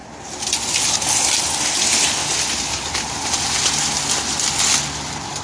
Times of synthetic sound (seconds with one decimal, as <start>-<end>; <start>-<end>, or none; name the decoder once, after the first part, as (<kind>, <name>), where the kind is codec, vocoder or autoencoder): none